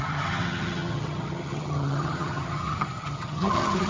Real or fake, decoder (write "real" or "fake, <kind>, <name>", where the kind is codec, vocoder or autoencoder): fake, vocoder, HiFi-GAN